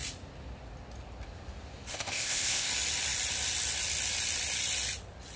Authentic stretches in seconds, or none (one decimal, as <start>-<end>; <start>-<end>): 0.0-1.9; 2.7-5.4